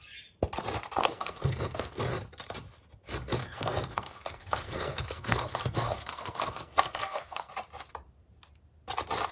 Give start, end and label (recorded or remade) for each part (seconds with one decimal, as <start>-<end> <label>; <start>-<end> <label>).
0.0-1.0 recorded; 1.0-2.0 remade; 2.0-3.4 recorded; 3.4-7.5 remade; 7.5-9.3 recorded

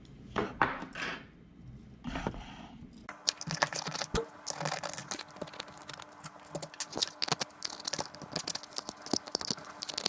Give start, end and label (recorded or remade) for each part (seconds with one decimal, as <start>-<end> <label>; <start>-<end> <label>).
0.0-10.1 recorded